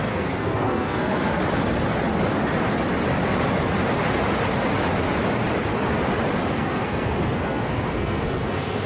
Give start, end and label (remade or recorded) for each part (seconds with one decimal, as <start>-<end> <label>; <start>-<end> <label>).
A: 0.0-1.4 remade; 1.4-6.5 recorded; 6.5-8.9 remade